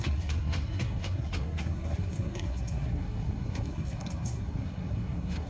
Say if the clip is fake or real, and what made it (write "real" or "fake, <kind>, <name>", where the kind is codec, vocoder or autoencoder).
fake, codec, SNAC